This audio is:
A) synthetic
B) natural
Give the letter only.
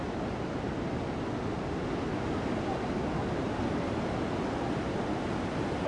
B